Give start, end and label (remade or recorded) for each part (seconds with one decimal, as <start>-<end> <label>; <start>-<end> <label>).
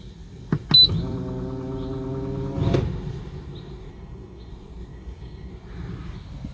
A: 0.0-3.9 recorded; 3.9-4.5 remade; 4.5-4.9 recorded; 4.9-5.5 remade; 5.5-6.5 recorded